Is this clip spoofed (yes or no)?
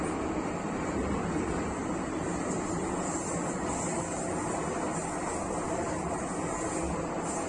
no